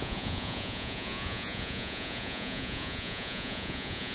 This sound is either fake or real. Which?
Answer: fake